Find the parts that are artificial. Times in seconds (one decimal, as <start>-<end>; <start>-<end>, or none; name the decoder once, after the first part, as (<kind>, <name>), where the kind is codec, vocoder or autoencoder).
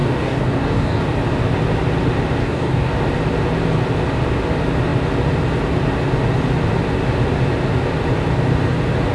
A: 0.0-1.0 (codec, DAC); 2.4-2.9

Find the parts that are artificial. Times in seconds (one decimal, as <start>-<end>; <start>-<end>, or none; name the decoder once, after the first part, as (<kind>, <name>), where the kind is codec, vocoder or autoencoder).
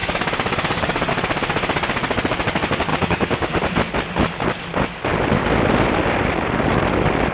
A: 0.0-1.1 (codec, DAC); 2.9-3.6